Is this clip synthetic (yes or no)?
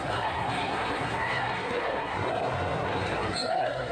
yes